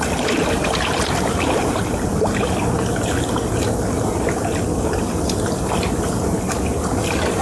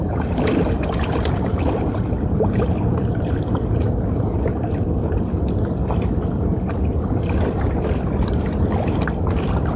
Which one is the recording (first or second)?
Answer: first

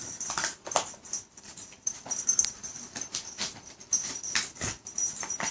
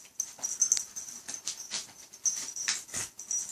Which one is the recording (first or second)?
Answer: second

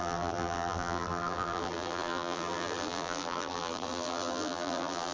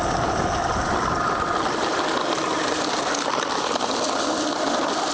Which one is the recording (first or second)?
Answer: second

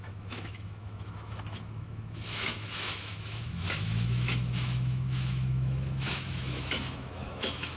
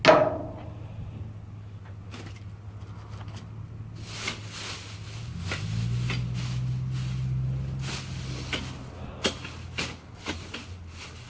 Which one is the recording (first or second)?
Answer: second